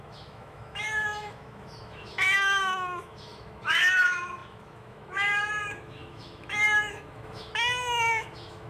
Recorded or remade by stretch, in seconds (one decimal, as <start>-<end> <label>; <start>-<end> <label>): 0.0-8.7 remade